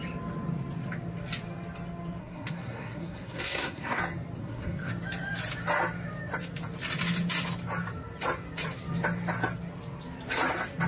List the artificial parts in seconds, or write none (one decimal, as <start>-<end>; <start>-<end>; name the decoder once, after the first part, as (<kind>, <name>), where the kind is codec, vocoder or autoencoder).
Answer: 2.2-4.0 (codec, SNAC); 4.4-4.9

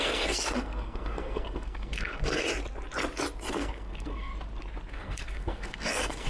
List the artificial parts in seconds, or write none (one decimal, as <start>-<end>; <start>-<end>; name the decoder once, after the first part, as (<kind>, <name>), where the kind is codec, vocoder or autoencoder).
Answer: 0.0-2.4 (codec, SNAC); 3.5-4.3; 4.9-6.3